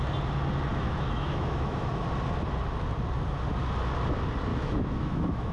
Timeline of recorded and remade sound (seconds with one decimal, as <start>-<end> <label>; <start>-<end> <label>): 0.0-0.7 recorded; 0.7-1.9 remade; 1.9-4.5 recorded; 4.5-5.5 remade

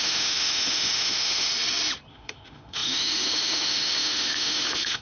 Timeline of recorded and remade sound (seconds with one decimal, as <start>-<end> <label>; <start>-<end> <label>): 0.0-1.5 remade; 1.5-2.1 recorded; 2.1-5.0 remade